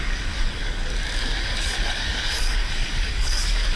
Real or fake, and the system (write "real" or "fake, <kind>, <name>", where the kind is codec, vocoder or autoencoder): fake, codec, DAC